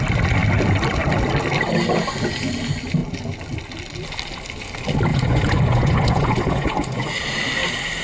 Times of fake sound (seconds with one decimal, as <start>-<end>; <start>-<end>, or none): 5.1-7.1